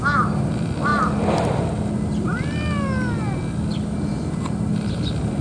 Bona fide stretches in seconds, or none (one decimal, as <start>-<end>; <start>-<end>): 0.0-5.4